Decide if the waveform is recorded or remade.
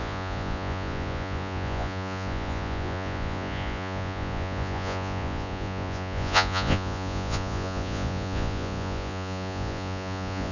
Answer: remade